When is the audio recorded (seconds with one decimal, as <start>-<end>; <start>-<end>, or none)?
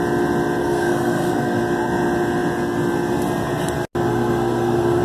0.0-0.6; 1.6-4.1